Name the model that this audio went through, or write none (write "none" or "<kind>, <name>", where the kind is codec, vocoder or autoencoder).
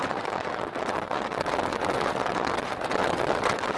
vocoder, WaveNeXt